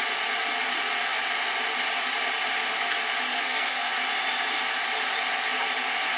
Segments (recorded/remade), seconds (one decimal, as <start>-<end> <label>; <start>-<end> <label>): 0.0-3.3 recorded; 3.3-3.9 remade; 3.9-6.2 recorded